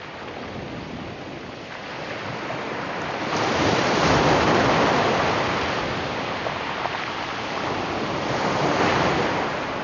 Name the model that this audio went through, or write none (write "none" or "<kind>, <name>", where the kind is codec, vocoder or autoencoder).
none